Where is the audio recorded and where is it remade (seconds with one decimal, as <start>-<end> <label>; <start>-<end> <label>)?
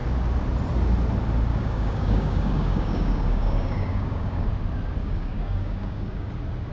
0.0-1.5 recorded; 1.5-4.5 remade; 4.5-5.0 recorded; 5.0-6.3 remade; 6.3-6.7 recorded